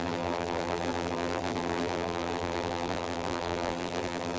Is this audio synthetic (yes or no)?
yes